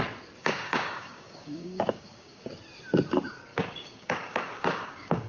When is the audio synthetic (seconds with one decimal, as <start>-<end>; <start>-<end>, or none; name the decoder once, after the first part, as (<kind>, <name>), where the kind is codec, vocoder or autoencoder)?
0.4-2.5 (codec, DAC); 3.5-5.3